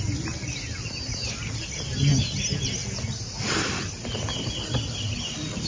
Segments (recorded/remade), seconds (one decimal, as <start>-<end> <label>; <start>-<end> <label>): 0.0-5.7 recorded

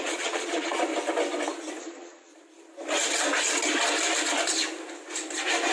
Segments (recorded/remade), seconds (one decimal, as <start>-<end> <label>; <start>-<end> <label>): 0.0-0.9 remade; 0.9-1.8 recorded; 1.8-2.3 remade; 2.3-5.7 recorded

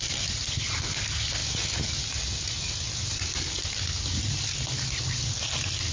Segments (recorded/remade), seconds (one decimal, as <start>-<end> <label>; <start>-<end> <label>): 0.0-5.9 recorded

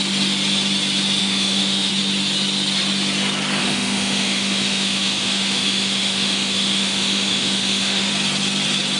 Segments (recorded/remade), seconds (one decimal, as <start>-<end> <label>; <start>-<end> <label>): 0.0-1.2 recorded; 1.2-1.9 remade; 1.9-3.6 recorded; 3.6-8.1 remade; 8.1-9.0 recorded

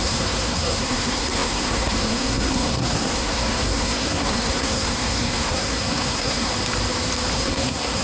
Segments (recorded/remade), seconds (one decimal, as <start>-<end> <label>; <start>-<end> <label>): 0.0-6.5 remade; 6.5-7.3 recorded; 7.3-8.0 remade

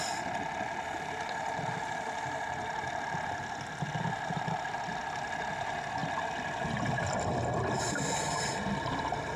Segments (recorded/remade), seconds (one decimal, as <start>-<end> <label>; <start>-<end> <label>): 0.0-9.4 recorded

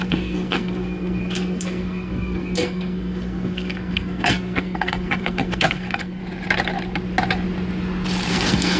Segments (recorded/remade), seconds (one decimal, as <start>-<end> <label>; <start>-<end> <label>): 0.0-6.2 remade; 6.2-8.3 recorded; 8.3-8.8 remade

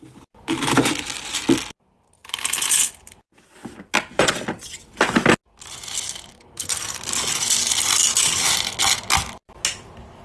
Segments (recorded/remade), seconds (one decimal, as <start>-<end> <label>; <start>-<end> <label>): 0.0-6.3 recorded; 6.3-7.0 remade; 7.0-10.2 recorded